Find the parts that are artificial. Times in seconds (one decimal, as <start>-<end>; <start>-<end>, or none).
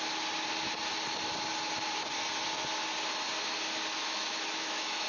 4.0-5.1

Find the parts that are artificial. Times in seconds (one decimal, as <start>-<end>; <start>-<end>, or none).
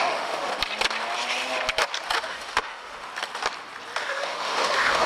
0.0-0.5; 2.2-3.1; 4.0-5.1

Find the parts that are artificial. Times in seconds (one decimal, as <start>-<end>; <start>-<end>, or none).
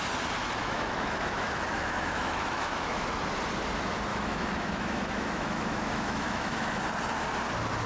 0.6-3.2; 4.1-6.8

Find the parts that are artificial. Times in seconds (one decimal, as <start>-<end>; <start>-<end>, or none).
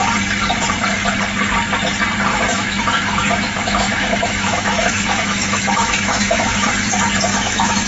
2.3-6.7; 7.3-7.9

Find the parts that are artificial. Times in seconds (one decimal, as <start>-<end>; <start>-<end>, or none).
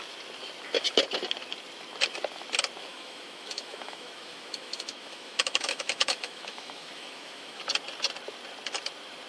2.9-7.6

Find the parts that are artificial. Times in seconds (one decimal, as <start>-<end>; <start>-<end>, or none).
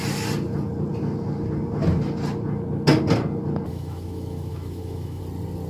3.7-5.2